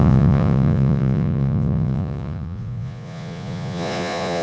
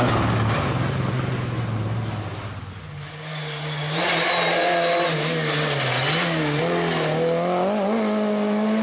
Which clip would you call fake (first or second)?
first